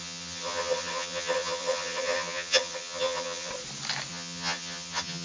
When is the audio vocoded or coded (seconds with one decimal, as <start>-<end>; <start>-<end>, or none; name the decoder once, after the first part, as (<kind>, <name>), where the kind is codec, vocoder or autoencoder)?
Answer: 0.0-3.5 (vocoder, HiFi-GAN); 4.1-5.2